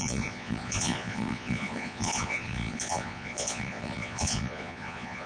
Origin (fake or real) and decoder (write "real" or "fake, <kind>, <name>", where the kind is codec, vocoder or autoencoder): fake, vocoder, Vocos